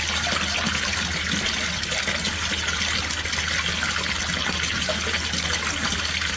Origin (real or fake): real